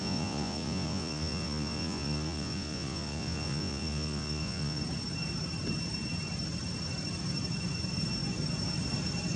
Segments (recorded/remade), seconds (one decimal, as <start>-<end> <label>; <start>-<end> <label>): 0.0-4.8 remade; 4.8-9.4 recorded